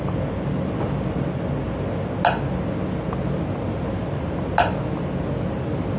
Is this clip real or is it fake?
real